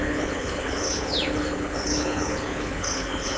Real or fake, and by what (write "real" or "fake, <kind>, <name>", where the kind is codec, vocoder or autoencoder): fake, codec, HILCodec